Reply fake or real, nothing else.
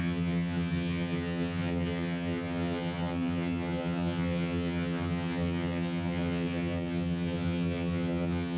fake